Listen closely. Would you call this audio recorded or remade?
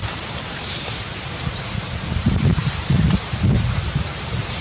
remade